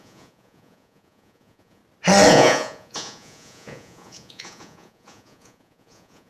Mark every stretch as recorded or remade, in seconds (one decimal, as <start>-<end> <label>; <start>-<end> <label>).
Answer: 0.0-1.8 remade; 1.8-2.3 recorded; 2.3-6.3 remade